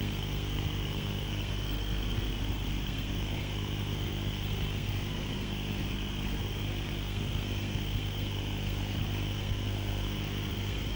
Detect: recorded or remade remade